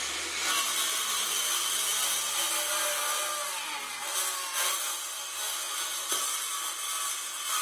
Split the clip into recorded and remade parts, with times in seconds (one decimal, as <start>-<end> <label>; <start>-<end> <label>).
0.0-7.6 recorded